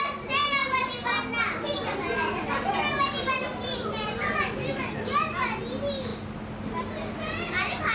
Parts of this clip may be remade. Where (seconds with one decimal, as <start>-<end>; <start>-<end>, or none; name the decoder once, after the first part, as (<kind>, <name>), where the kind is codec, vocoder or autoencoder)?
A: 0.6-4.9 (vocoder, BigVGAN v2)

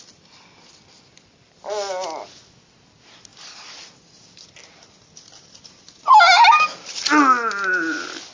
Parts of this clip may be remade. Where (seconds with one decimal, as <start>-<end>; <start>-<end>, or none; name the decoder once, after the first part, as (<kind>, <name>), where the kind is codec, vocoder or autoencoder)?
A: none

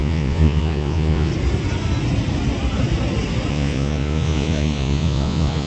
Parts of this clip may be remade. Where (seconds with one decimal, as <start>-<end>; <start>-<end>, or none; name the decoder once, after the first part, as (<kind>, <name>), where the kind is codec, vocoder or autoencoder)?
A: 0.0-1.3 (vocoder, Vocos); 3.5-5.7